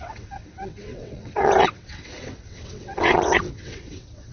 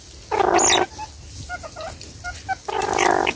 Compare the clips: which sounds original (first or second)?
second